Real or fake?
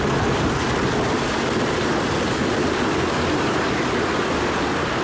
real